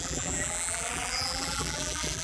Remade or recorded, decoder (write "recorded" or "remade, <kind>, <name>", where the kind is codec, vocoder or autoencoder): remade, vocoder, BigVGAN v2